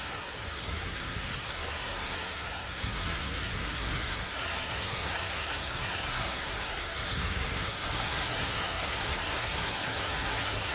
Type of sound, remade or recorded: remade